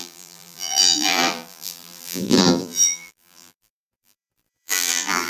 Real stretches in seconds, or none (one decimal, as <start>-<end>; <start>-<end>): none